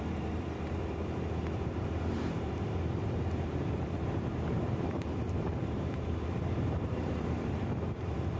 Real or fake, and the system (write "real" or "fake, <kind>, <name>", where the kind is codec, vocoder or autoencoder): fake, vocoder, BigVGAN v2